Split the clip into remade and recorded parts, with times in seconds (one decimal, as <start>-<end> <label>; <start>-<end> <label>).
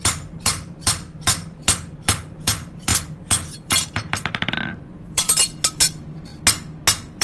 0.0-1.6 remade; 1.6-2.2 recorded; 2.2-6.3 remade; 6.3-7.2 recorded